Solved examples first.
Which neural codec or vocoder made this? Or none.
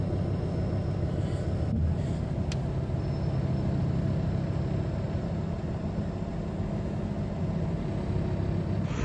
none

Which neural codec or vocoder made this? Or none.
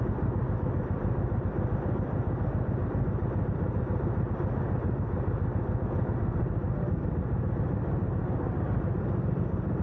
none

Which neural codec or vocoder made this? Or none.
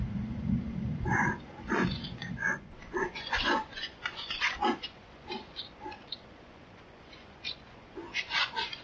vocoder, Vocos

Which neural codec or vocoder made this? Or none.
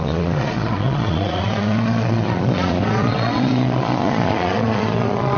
vocoder, Vocos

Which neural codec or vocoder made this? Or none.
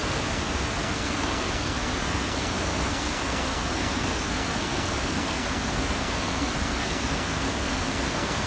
codec, SNAC